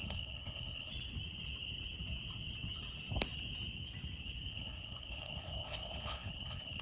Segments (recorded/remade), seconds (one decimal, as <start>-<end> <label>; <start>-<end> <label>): 0.0-0.9 remade; 0.9-4.5 recorded; 4.5-6.8 remade